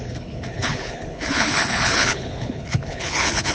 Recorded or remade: remade